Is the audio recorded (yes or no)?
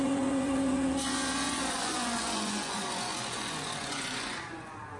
no